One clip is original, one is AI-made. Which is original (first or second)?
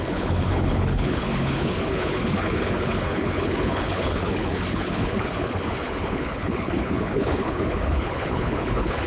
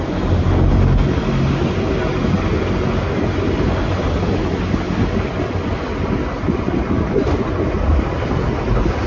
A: second